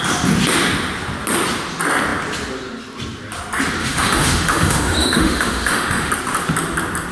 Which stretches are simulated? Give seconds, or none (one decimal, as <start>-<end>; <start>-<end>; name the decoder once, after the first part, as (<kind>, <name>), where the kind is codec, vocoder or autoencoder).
3.8-6.1 (autoencoder, DAC-VAE)